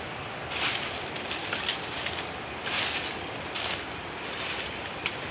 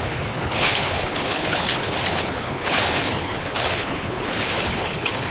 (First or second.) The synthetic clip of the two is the second